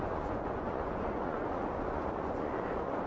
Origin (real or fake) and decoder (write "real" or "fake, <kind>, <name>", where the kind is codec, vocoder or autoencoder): fake, vocoder, Vocos